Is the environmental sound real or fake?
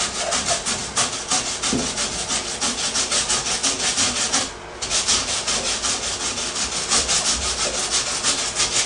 real